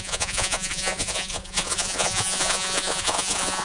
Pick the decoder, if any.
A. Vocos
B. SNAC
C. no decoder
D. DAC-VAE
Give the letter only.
A